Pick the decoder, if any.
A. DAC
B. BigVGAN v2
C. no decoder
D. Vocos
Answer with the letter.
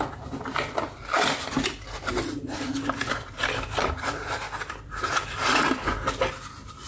C